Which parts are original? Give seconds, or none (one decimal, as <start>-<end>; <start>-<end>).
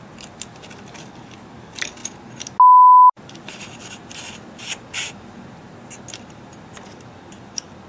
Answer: 0.0-7.9